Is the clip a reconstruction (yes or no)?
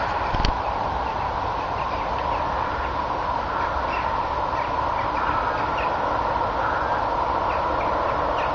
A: no